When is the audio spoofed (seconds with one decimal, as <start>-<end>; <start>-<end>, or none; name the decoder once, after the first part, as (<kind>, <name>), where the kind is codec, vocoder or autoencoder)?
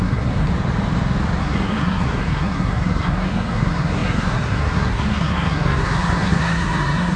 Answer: 0.0-0.5 (codec, SNAC); 1.4-7.2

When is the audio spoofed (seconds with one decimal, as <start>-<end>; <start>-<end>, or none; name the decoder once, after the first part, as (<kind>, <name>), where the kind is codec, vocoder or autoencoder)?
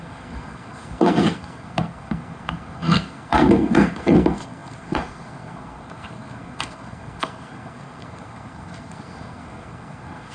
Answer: 0.0-10.3 (codec, SNAC)